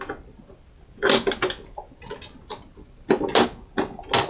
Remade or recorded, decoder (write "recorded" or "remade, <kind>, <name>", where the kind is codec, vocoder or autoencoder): recorded